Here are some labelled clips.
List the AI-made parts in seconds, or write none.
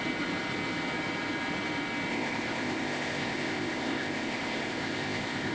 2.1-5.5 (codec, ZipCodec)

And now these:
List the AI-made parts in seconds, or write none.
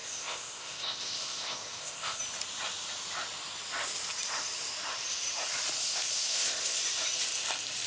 0.0-2.2 (codec, ZipCodec); 5.8-6.8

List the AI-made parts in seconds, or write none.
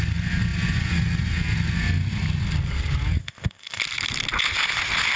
3.2-3.8 (codec, ZipCodec)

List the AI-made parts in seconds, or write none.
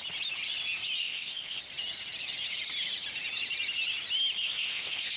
1.0-1.6 (codec, ZipCodec); 4.4-5.2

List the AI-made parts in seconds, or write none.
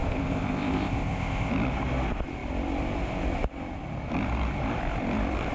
0.0-1.5 (codec, ZipCodec)